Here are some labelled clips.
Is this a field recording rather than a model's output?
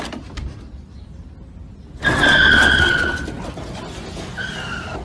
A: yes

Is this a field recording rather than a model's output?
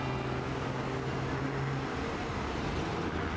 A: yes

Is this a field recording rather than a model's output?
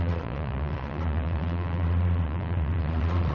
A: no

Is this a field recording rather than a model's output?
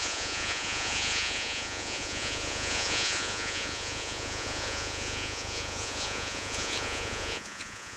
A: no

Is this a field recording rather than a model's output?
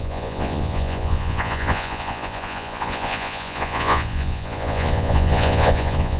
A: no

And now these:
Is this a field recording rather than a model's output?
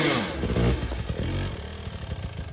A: yes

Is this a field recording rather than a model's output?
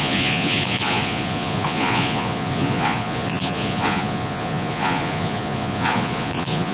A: no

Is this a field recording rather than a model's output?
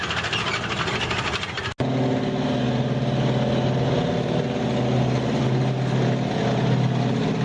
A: yes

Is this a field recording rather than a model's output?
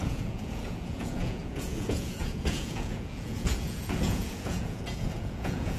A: no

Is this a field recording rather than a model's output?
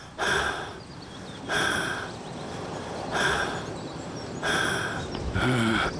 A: yes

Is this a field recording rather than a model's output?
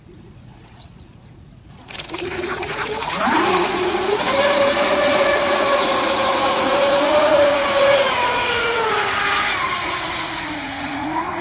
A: no